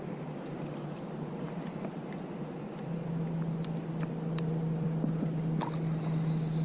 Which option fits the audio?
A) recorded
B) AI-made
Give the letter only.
A